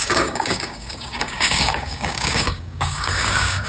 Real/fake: fake